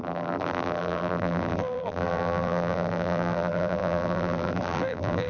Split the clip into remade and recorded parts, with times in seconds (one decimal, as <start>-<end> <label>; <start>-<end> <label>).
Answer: 0.0-5.3 remade